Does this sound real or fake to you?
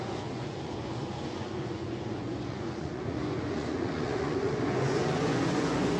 fake